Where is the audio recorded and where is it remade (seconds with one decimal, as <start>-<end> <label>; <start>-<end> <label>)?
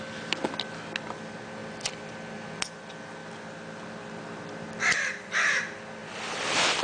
0.0-1.6 recorded; 1.6-2.7 remade; 2.7-3.2 recorded; 3.2-4.2 remade; 4.2-6.0 recorded; 6.0-6.8 remade